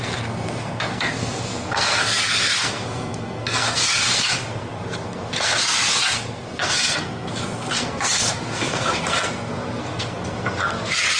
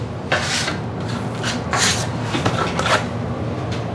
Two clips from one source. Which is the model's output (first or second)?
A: first